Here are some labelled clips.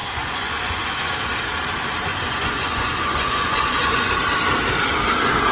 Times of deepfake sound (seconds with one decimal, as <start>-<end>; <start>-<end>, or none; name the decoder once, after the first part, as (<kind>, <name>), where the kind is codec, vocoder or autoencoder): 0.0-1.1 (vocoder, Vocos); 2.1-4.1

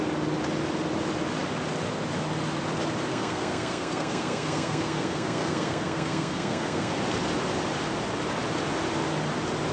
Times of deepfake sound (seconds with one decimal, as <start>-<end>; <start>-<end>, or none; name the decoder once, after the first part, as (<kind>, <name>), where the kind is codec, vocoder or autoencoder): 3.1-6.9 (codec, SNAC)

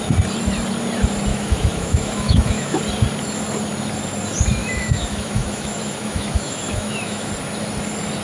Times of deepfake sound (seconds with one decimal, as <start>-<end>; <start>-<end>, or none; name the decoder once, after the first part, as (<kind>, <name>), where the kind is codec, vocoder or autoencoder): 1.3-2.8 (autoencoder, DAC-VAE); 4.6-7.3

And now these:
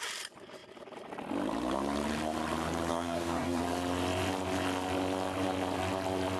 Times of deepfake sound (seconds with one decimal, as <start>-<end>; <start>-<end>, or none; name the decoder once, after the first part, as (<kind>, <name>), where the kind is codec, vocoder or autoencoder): 2.9-3.6 (codec, SNAC)

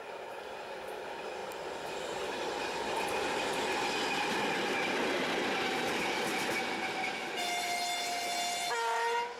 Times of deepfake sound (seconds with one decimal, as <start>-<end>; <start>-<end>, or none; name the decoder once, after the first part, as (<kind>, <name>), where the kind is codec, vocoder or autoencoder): none